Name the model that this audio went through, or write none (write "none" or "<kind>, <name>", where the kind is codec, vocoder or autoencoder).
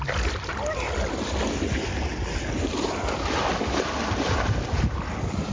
none